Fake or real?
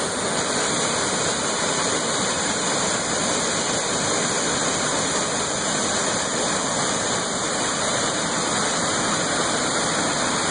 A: real